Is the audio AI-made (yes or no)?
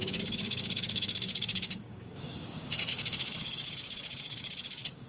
yes